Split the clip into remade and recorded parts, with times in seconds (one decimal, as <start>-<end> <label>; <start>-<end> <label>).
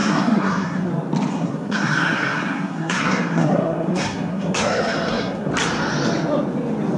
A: 0.0-0.9 remade; 0.9-1.3 recorded; 1.3-5.5 remade; 5.5-7.0 recorded